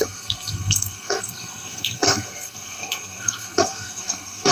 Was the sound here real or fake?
fake